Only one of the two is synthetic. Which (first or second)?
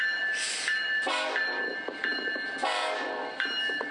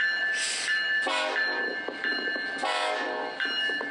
first